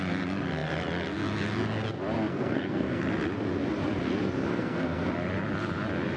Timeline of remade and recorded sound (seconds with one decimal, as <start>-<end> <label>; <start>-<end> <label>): 0.0-2.3 recorded; 2.3-3.0 remade; 3.0-4.5 recorded; 4.5-5.1 remade; 5.1-6.2 recorded